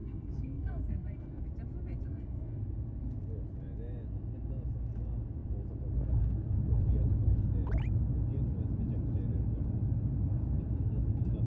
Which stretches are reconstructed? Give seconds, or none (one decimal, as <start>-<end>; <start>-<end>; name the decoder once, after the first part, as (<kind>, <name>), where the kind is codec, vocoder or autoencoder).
0.0-1.4 (codec, SNAC); 2.1-2.6